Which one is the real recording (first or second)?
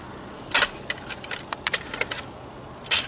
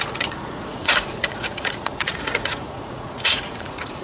first